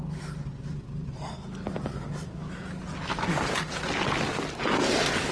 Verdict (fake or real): real